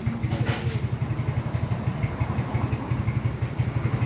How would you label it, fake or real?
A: real